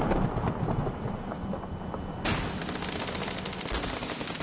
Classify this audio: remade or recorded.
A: recorded